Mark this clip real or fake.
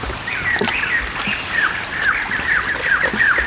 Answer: real